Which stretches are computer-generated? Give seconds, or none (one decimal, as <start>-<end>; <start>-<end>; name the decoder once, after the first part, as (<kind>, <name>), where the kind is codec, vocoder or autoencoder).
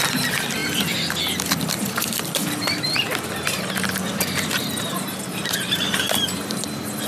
0.0-0.6 (vocoder, BigVGAN v2); 1.9-7.1